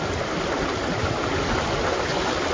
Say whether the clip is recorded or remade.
recorded